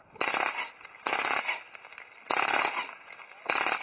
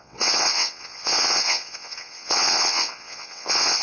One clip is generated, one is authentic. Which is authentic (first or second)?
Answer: first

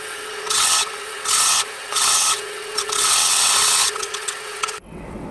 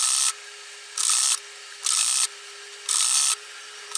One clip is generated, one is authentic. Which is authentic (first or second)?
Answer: second